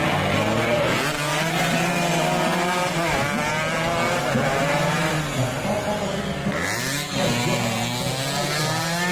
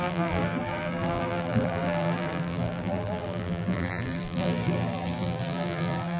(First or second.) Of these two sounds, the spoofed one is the second